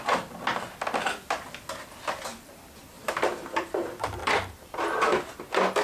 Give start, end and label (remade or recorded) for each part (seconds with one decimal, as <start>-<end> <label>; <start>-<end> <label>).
0.0-4.2 recorded; 4.2-5.3 remade; 5.3-5.8 recorded